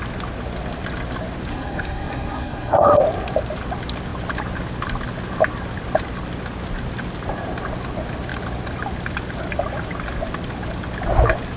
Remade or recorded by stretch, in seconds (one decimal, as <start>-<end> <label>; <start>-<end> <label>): 0.0-1.5 recorded; 1.5-3.0 remade; 3.0-11.6 recorded